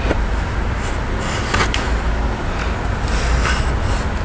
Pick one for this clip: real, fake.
real